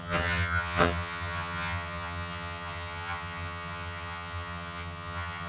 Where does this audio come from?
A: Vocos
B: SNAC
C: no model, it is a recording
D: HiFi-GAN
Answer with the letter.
D